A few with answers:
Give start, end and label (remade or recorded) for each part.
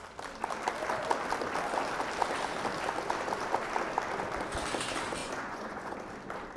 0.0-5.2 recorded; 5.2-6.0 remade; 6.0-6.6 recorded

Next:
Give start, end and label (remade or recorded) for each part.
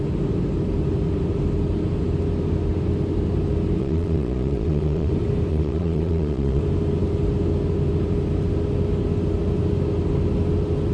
0.0-3.8 recorded; 3.8-5.1 remade; 5.1-5.5 recorded; 5.5-6.6 remade; 6.6-10.9 recorded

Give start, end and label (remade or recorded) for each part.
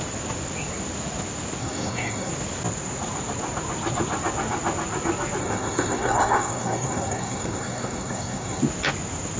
0.0-1.6 recorded; 1.6-2.3 remade; 2.3-5.4 recorded; 5.4-8.6 remade; 8.6-9.4 recorded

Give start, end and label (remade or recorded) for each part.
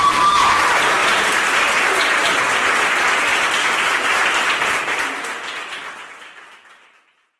0.0-7.4 recorded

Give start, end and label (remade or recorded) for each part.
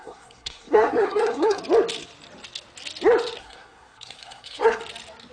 0.0-1.6 remade; 1.6-3.4 recorded; 3.4-4.8 remade; 4.8-5.3 recorded